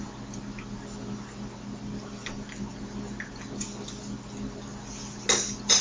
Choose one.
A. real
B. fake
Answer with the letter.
A